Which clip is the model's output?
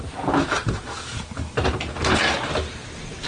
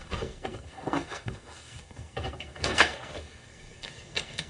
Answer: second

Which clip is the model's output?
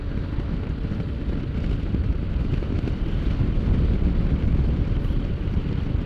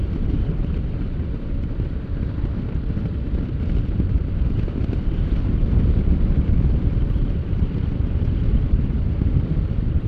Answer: second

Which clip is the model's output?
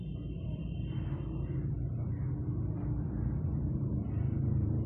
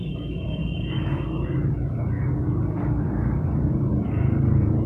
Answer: second